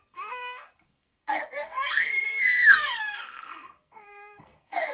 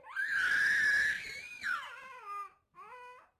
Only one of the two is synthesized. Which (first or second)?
first